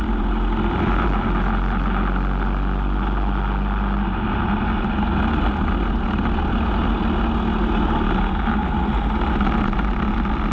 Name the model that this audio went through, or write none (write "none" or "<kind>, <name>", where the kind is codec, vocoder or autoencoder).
none